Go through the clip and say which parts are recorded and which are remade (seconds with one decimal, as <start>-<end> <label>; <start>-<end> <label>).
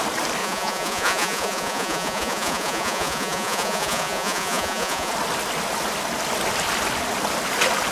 0.0-0.4 recorded; 0.4-5.1 remade; 5.1-7.9 recorded